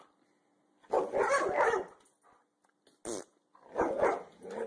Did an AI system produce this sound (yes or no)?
no